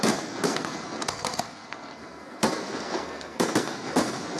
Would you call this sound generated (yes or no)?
yes